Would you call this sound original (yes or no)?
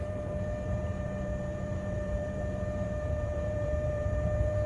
no